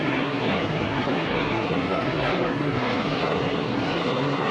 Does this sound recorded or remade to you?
remade